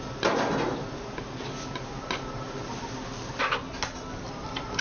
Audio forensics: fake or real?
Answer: real